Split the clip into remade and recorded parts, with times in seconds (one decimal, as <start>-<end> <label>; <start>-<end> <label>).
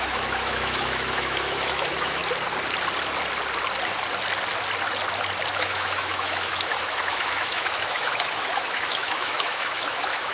0.0-2.2 remade; 2.2-5.5 recorded; 5.5-10.3 remade